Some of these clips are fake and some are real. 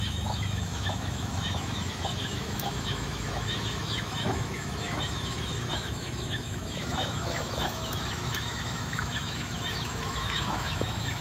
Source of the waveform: fake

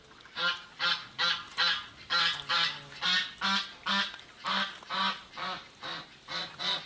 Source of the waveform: real